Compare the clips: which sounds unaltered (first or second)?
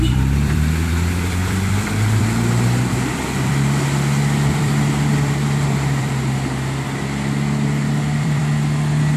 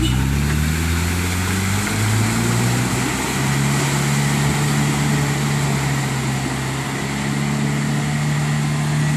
second